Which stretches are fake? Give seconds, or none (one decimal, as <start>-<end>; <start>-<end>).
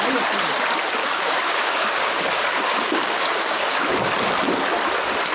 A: 1.0-3.8